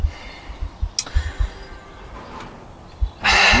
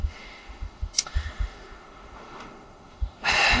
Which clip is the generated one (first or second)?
second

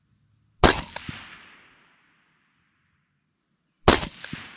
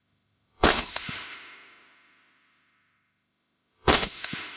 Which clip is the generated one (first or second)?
second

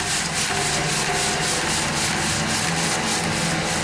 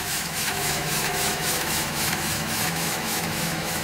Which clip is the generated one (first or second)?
second